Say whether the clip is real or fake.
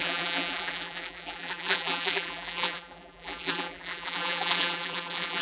fake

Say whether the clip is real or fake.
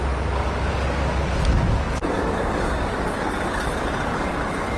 fake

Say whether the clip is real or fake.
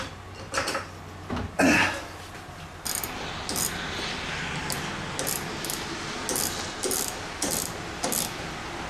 real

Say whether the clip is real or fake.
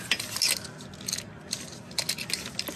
real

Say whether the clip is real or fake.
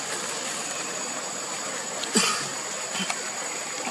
real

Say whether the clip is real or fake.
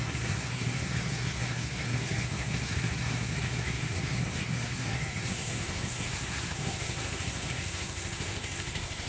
fake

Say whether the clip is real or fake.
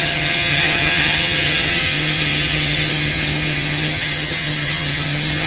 fake